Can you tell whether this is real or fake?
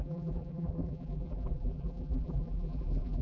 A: fake